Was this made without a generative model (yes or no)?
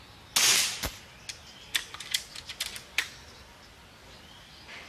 yes